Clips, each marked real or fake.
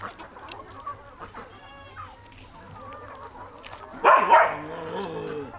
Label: real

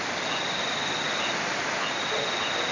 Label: real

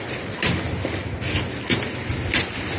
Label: real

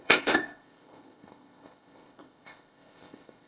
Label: fake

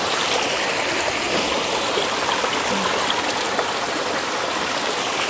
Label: real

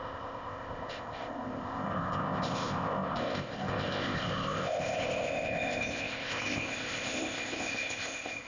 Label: fake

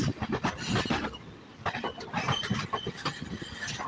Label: real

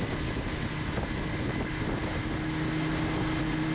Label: real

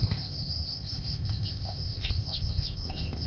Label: fake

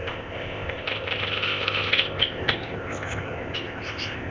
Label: fake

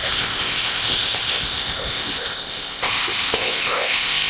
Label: fake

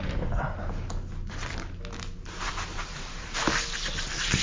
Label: real